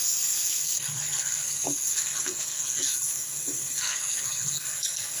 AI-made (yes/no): yes